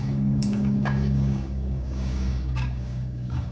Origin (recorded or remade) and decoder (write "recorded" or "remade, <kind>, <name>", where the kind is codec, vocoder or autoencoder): remade, codec, DAC